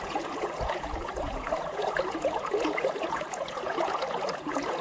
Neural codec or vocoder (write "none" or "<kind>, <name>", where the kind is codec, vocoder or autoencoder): vocoder, Vocos